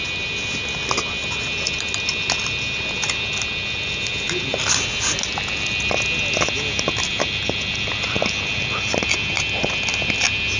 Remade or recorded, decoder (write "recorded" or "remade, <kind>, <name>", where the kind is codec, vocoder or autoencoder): recorded